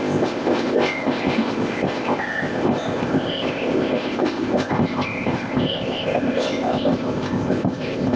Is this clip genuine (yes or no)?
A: no